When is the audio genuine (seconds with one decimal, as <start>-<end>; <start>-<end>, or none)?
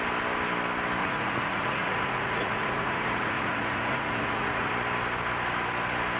0.0-1.0; 4.7-6.2